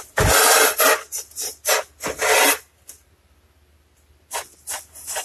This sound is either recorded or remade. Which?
recorded